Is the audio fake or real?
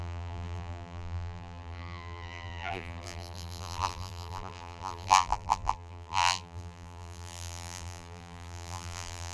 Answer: fake